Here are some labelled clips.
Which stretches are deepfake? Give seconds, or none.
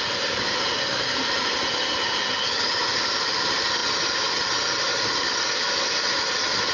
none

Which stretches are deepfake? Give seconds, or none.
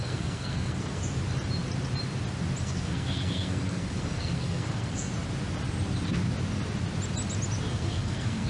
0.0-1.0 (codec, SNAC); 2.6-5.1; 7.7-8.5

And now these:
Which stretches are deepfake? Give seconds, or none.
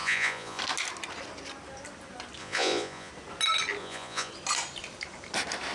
0.0-0.6 (vocoder, Vocos); 2.4-3.1; 3.8-4.3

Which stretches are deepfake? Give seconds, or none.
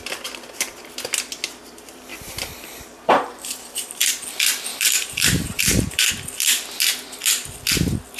2.1-4.1 (vocoder, BigVGAN v2); 4.7-6.1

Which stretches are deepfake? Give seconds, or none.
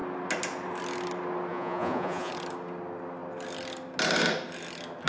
1.5-2.3 (vocoder, Vocos)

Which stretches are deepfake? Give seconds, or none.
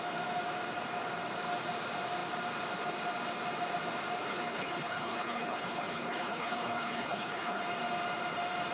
4.2-7.6 (codec, HILCodec)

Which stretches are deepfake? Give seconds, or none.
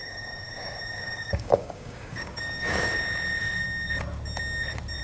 0.0-3.0 (codec, DAC)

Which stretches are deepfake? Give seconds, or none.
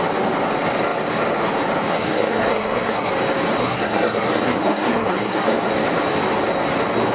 1.9-3.1 (codec, SNAC); 3.6-5.7